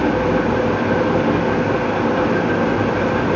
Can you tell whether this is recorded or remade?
recorded